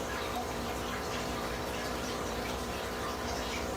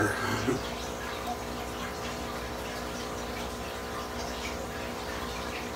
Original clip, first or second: second